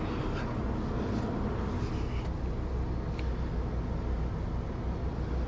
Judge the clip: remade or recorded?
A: recorded